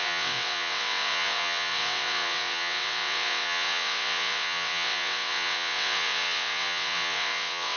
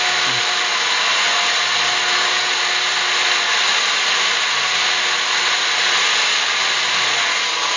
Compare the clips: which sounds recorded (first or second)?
second